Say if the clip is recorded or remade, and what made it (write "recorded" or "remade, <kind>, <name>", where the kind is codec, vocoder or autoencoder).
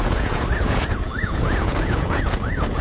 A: remade, vocoder, Vocos